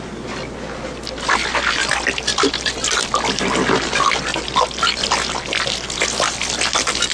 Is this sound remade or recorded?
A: recorded